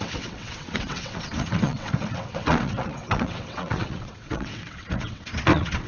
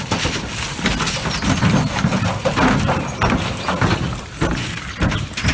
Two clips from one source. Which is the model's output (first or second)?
first